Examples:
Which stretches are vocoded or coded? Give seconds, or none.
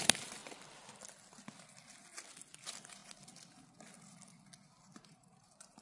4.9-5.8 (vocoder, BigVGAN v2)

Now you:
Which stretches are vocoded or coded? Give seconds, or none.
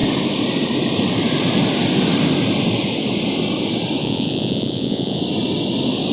4.0-5.2 (vocoder, Vocos)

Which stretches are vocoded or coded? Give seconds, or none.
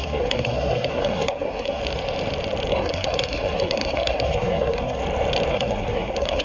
0.0-1.8 (codec, SNAC); 2.7-5.0; 5.5-6.4